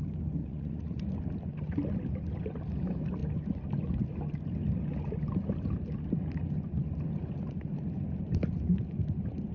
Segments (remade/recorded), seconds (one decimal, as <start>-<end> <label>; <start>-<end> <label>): 0.0-0.4 recorded; 0.4-1.0 remade; 1.0-9.5 recorded